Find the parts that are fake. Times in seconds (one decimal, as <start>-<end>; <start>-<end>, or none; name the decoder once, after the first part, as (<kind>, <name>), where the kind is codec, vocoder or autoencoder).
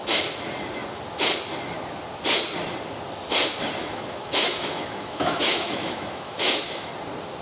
3.8-6.9 (autoencoder, DAC-VAE)